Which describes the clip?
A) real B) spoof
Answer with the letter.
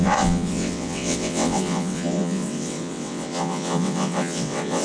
B